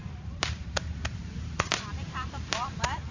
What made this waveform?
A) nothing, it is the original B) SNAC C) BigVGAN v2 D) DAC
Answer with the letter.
C